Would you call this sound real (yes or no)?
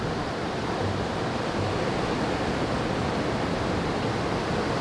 yes